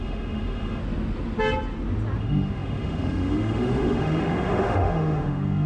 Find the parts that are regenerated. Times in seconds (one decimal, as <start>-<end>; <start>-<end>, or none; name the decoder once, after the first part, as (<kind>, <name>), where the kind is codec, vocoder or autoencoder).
0.0-0.8 (autoencoder, DAC-VAE); 2.2-5.7